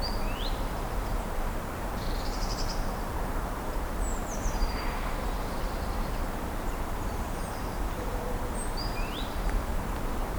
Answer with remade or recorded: remade